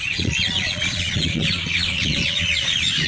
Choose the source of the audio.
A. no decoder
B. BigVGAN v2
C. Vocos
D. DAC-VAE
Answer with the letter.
C